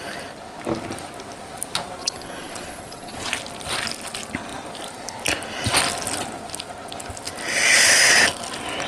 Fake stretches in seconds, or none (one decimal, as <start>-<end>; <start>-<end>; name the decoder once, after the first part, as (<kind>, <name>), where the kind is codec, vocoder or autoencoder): 2.0-3.3 (vocoder, Vocos)